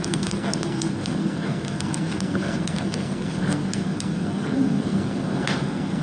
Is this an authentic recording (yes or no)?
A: no